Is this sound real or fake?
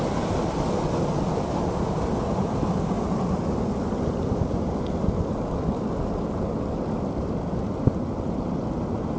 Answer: real